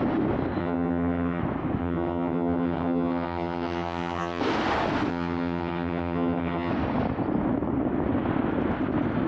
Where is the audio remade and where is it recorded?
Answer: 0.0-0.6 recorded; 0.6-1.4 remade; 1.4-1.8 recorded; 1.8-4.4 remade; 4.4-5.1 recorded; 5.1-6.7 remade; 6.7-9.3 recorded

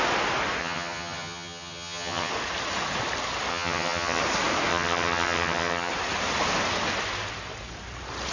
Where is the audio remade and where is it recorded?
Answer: 0.0-0.6 recorded; 0.6-2.3 remade; 2.3-3.5 recorded; 3.5-4.2 remade; 4.2-4.7 recorded; 4.7-5.9 remade; 5.9-8.3 recorded

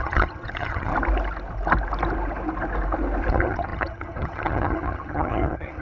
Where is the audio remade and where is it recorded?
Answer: 0.0-0.9 remade; 0.9-3.3 recorded; 3.3-5.8 remade

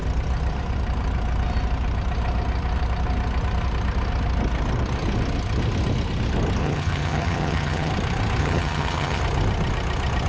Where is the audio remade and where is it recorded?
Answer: 0.0-6.6 recorded; 6.6-7.9 remade; 7.9-8.4 recorded; 8.4-9.2 remade; 9.2-10.3 recorded

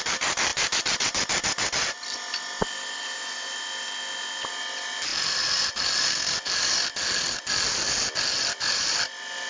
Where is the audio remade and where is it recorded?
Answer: 0.0-9.5 recorded

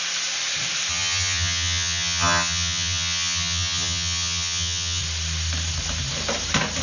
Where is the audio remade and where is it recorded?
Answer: 0.0-0.9 recorded; 0.9-5.0 remade; 5.0-6.8 recorded

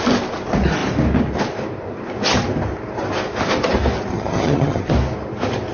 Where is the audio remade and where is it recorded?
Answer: 0.0-4.1 recorded; 4.1-4.9 remade; 4.9-5.7 recorded